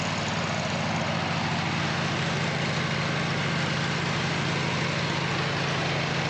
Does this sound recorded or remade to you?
recorded